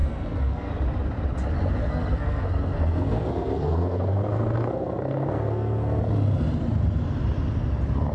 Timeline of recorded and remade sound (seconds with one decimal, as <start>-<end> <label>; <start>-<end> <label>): 0.0-0.7 remade; 0.7-1.8 recorded; 1.8-6.0 remade; 6.0-8.1 recorded